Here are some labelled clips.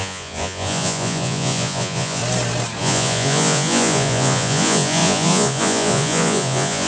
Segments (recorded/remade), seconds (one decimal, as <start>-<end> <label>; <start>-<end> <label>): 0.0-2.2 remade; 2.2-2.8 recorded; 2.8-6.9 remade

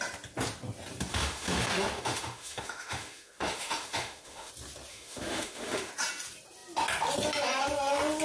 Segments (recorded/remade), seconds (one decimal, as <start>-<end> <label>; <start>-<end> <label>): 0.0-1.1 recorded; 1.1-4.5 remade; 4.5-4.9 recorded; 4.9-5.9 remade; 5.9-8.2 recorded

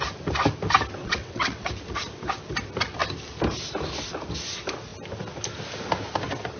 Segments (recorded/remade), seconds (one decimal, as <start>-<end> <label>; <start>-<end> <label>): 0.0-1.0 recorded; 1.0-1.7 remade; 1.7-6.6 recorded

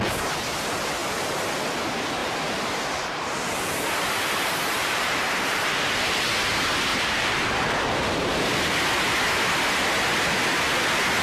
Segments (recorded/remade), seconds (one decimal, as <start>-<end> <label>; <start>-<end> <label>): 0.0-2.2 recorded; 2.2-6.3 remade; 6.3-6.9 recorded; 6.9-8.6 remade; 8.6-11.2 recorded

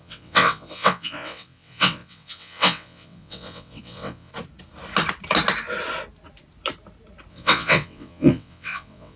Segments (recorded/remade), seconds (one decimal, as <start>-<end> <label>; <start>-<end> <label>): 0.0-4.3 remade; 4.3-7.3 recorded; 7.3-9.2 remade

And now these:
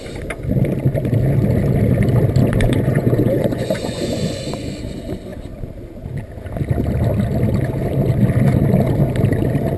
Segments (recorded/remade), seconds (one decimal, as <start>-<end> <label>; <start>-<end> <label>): 0.0-2.4 recorded; 2.4-4.7 remade; 4.7-9.8 recorded

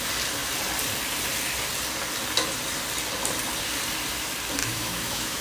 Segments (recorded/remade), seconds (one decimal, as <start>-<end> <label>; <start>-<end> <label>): 0.0-4.6 recorded; 4.6-5.4 remade

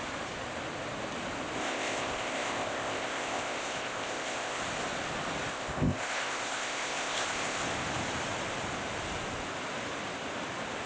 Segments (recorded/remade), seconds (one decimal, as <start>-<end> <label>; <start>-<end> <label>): 0.0-1.6 recorded; 1.6-4.6 remade; 4.6-5.5 recorded; 5.5-7.6 remade; 7.6-10.9 recorded